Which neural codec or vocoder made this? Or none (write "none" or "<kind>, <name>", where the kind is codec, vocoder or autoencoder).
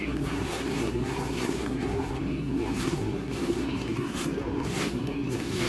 codec, SNAC